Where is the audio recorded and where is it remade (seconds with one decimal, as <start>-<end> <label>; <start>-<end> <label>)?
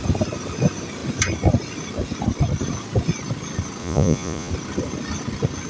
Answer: 0.0-3.8 recorded; 3.8-4.5 remade; 4.5-5.7 recorded